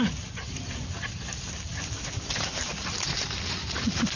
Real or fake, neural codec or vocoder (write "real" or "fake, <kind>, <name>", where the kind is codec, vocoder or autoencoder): real